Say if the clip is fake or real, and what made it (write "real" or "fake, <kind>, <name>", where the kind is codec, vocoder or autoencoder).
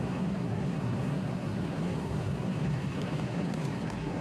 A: fake, codec, SNAC